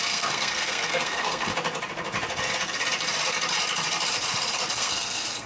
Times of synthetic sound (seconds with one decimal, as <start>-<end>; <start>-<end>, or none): 0.0-1.5; 4.7-5.5